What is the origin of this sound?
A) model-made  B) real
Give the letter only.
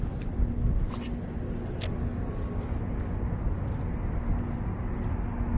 B